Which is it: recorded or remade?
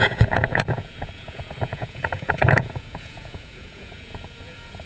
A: remade